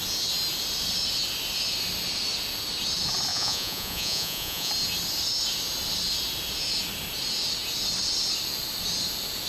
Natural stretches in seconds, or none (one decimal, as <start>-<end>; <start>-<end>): 0.0-3.3; 4.7-9.5